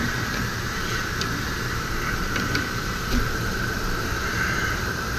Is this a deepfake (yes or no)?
yes